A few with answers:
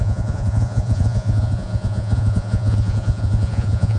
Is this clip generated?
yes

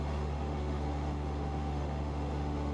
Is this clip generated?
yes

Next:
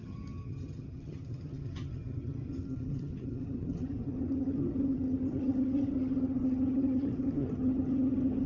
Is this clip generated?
yes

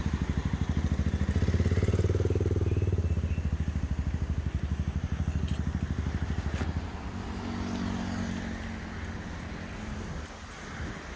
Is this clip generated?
no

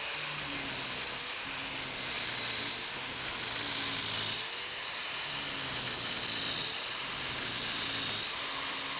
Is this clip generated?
no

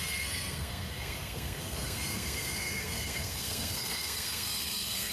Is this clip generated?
yes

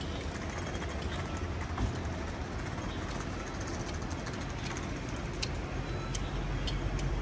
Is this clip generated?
no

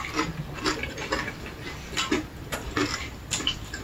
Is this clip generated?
no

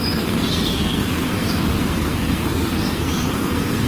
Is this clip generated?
yes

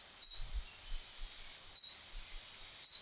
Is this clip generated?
no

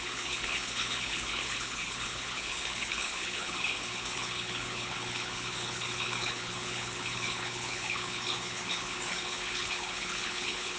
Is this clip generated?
yes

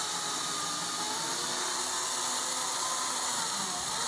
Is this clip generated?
no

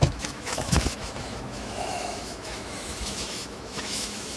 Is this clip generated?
yes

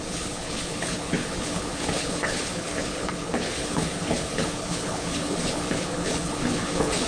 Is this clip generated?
yes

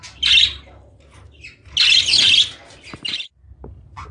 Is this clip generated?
no